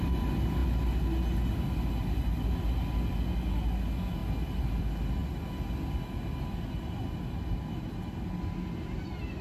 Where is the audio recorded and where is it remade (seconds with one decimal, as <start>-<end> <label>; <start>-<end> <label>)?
0.0-9.4 recorded